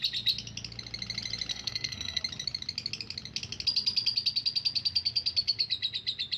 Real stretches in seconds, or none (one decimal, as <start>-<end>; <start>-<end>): 0.0-1.5; 2.2-6.4